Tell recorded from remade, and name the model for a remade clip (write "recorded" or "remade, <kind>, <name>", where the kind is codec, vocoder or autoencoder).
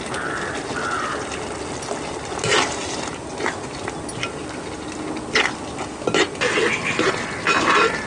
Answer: recorded